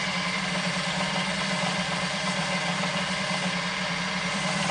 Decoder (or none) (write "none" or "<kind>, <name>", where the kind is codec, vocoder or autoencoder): vocoder, BigVGAN v2